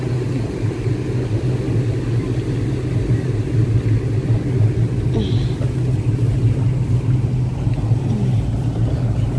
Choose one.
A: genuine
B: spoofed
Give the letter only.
A